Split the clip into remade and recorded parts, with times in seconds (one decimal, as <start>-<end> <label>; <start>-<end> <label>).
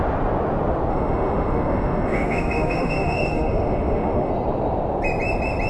0.0-0.9 recorded; 0.9-4.3 remade; 4.3-5.7 recorded